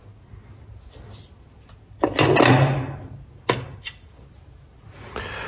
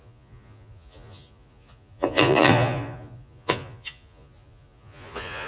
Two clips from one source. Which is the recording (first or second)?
first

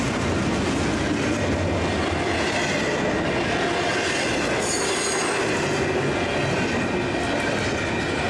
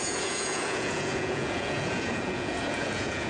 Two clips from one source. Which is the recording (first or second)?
first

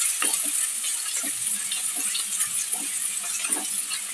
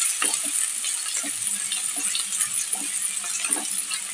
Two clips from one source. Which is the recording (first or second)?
second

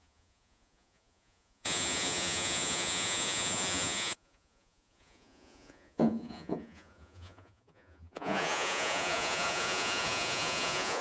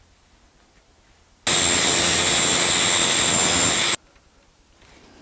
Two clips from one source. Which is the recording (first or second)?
second